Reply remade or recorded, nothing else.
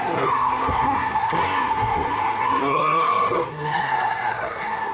remade